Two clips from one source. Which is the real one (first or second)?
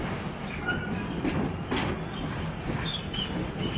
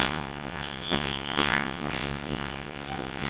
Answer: first